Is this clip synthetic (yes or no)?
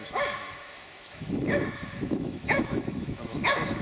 yes